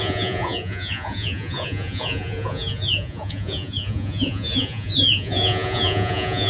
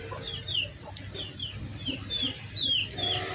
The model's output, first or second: first